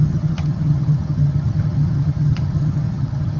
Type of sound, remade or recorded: remade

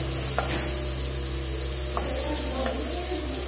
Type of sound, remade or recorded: recorded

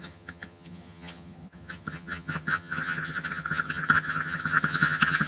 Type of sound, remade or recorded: remade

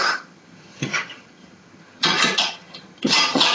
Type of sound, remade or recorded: remade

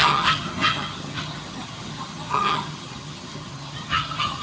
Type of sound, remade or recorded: remade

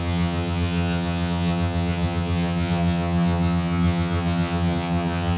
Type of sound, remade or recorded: remade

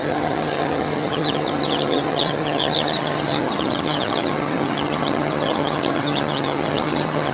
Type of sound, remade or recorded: remade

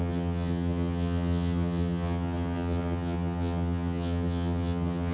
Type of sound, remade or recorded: remade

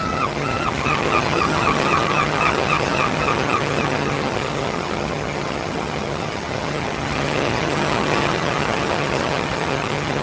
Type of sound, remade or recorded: remade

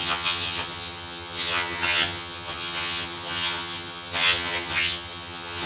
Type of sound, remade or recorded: remade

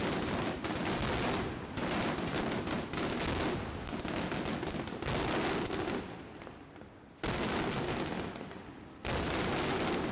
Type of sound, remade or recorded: recorded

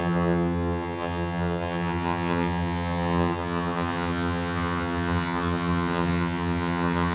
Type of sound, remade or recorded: remade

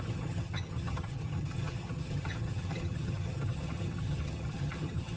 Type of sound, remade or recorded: remade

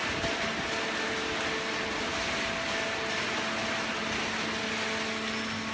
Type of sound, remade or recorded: recorded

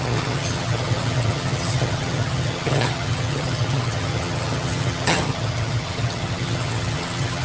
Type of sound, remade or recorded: remade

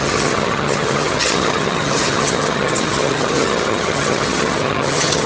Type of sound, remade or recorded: remade